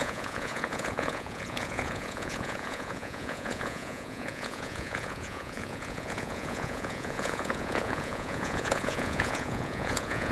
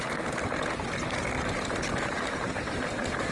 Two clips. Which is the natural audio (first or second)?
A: second